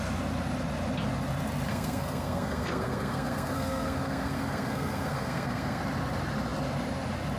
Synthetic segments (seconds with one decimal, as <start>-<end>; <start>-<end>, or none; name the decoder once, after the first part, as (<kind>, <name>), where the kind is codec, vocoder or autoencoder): 1.7-5.8 (codec, SNAC)

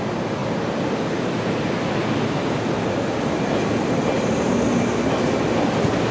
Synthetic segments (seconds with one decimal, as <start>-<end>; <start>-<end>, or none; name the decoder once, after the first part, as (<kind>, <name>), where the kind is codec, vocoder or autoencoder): none

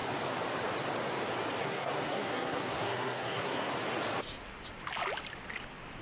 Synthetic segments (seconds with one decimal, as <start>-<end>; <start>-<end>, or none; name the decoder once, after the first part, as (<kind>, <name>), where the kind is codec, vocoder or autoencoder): 1.6-3.7 (codec, SNAC)

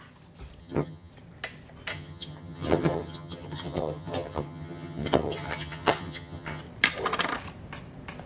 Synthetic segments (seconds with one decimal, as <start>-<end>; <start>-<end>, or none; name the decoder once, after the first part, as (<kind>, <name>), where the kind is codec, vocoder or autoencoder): 0.6-1.1 (vocoder, HiFi-GAN); 1.9-6.6